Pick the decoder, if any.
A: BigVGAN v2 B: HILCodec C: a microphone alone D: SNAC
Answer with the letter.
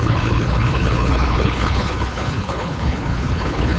B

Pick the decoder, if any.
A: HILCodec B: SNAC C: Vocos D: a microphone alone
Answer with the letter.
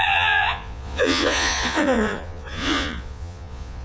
C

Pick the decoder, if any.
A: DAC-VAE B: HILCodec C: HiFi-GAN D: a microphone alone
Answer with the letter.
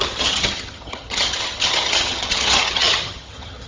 C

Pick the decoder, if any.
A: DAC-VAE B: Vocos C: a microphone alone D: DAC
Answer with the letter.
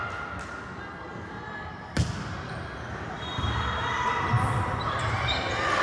C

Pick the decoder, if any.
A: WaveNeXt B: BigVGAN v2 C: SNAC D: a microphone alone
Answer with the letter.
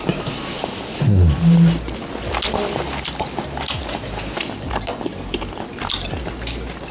D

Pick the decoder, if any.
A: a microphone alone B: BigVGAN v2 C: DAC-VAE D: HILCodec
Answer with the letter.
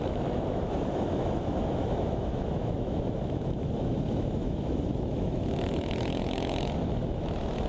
C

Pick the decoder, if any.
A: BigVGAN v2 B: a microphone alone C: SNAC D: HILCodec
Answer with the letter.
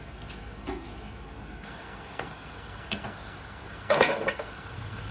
C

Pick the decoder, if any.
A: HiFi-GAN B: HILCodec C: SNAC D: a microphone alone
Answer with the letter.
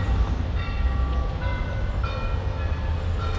D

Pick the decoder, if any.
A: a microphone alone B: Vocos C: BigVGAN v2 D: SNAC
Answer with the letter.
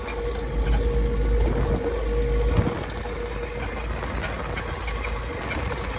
A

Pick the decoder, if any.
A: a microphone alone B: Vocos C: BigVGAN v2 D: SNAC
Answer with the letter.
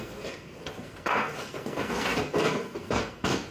D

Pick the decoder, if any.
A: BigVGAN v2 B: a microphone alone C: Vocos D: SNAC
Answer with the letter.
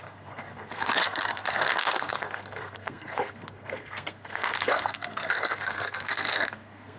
D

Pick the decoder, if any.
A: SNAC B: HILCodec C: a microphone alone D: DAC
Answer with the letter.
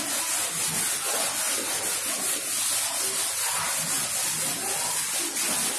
C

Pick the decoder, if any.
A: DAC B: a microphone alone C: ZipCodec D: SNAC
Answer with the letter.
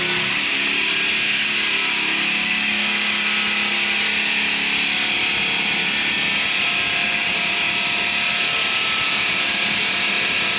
B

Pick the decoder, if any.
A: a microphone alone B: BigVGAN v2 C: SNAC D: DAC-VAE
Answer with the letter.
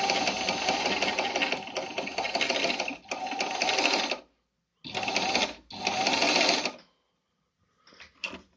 A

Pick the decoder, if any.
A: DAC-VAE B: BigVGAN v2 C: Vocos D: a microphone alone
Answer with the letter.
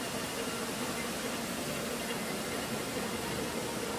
D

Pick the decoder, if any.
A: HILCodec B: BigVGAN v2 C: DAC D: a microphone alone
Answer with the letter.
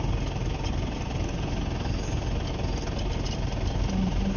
D